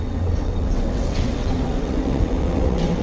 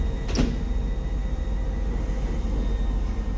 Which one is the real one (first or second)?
second